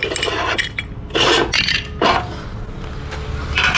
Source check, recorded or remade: recorded